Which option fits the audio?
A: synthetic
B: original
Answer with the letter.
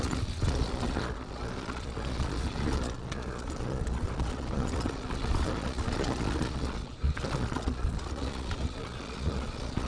A